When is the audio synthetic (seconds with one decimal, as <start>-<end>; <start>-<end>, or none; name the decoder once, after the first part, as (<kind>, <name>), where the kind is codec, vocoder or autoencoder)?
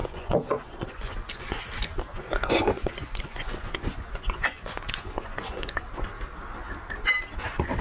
0.0-1.6 (vocoder, Vocos); 2.1-5.9